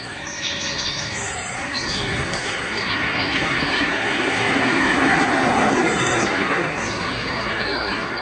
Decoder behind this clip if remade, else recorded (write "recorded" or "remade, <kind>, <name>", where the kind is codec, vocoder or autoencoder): remade, codec, SNAC